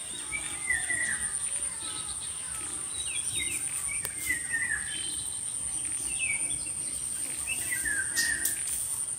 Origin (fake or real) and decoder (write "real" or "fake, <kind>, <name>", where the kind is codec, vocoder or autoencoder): real